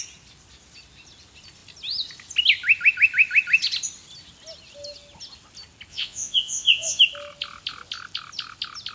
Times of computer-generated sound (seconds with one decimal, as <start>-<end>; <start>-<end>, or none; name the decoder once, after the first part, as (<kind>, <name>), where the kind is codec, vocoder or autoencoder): 5.9-7.0 (vocoder, Vocos)